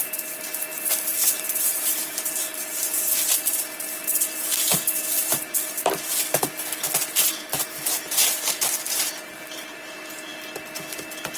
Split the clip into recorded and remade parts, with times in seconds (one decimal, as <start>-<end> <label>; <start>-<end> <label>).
0.0-6.1 remade; 6.1-7.3 recorded; 7.3-10.3 remade; 10.3-11.4 recorded